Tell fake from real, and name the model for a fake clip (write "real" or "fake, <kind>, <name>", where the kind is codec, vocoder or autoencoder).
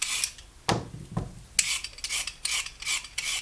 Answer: real